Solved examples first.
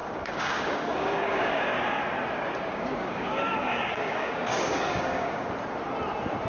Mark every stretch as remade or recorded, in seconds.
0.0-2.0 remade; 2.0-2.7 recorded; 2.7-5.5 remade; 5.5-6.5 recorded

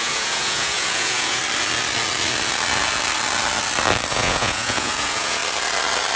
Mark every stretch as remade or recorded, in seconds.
0.0-1.4 remade; 1.4-4.1 recorded; 4.1-5.4 remade; 5.4-6.2 recorded

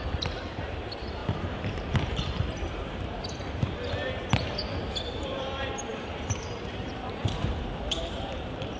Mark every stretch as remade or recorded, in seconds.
0.0-8.8 remade

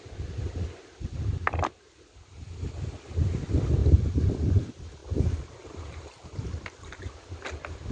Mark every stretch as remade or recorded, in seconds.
0.0-3.8 recorded; 3.8-4.3 remade; 4.3-5.0 recorded; 5.0-6.3 remade; 6.3-7.9 recorded

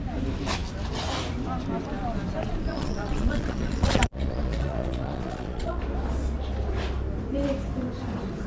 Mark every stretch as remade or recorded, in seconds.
0.0-2.7 recorded; 2.7-5.8 remade; 5.8-8.5 recorded